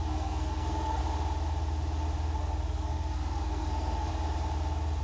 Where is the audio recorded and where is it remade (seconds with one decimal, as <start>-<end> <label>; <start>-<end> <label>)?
0.0-1.0 remade; 1.0-2.4 recorded; 2.4-4.1 remade; 4.1-5.0 recorded